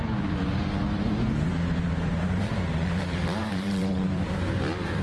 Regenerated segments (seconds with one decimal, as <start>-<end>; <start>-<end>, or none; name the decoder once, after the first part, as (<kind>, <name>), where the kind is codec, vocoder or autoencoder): 3.4-4.5 (vocoder, BigVGAN v2)